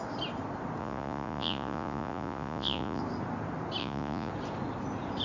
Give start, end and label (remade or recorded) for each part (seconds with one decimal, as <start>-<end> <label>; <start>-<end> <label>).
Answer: 0.0-0.8 recorded; 0.8-3.0 remade; 3.0-3.8 recorded; 3.8-4.3 remade; 4.3-5.2 recorded